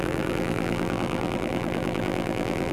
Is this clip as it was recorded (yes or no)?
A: no